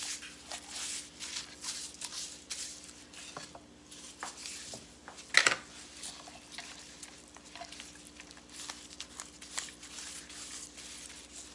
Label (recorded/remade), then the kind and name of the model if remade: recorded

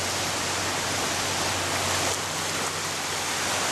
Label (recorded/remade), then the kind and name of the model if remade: recorded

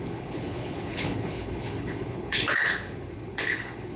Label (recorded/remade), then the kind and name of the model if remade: remade, codec, HILCodec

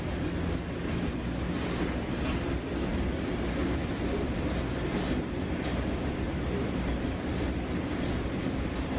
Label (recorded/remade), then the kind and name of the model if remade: recorded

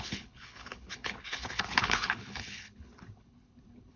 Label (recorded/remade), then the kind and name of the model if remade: remade, codec, HILCodec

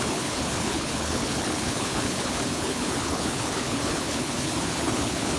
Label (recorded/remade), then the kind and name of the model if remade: remade, codec, HILCodec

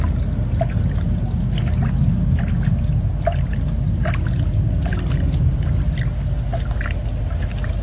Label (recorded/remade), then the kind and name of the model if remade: recorded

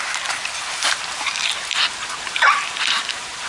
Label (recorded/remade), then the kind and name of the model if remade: recorded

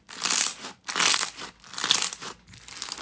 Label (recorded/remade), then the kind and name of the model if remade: recorded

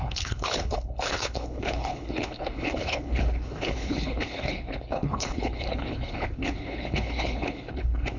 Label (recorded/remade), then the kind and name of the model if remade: remade, codec, HILCodec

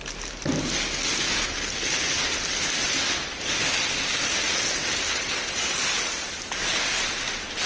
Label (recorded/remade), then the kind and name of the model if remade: recorded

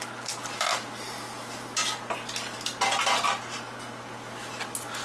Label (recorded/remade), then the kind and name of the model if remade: recorded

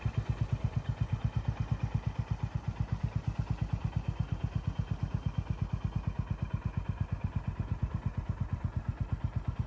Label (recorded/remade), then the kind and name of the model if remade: recorded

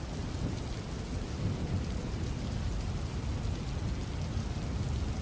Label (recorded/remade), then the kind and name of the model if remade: recorded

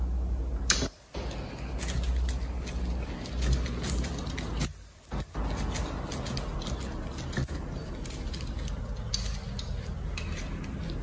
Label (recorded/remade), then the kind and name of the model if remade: recorded